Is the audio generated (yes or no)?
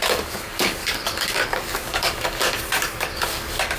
yes